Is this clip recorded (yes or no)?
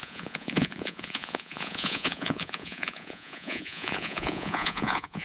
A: no